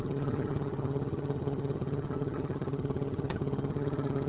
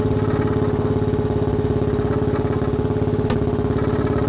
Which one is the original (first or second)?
second